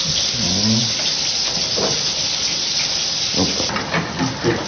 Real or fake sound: real